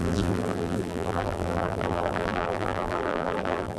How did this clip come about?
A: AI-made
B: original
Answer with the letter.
A